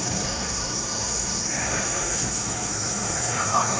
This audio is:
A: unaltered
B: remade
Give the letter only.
B